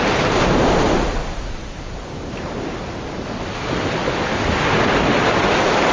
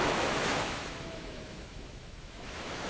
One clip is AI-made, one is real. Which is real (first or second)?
first